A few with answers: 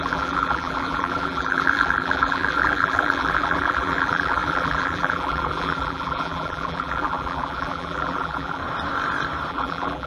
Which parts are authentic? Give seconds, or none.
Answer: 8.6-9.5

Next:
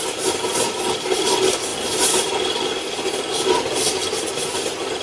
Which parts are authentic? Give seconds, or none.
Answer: 0.0-5.0

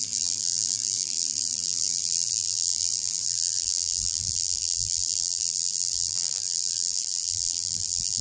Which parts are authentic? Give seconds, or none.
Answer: none

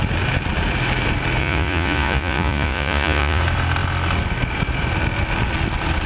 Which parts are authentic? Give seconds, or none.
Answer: 0.0-1.4; 3.4-6.1